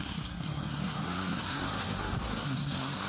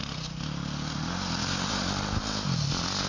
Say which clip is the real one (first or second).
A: second